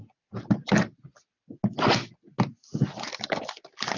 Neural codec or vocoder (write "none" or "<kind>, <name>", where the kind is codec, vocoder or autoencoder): none